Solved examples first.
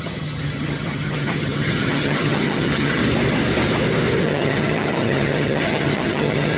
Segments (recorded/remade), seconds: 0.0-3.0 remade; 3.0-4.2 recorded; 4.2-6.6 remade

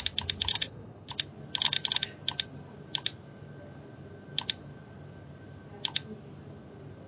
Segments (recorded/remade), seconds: 0.0-0.5 recorded; 0.5-1.1 remade; 1.1-7.1 recorded

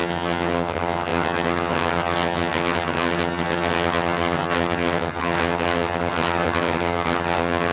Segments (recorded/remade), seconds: 0.0-7.7 remade

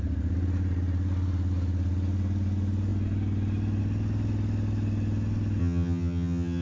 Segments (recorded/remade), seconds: 0.0-5.6 recorded; 5.6-6.6 remade